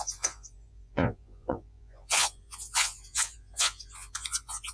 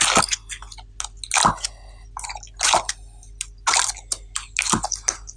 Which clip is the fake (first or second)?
first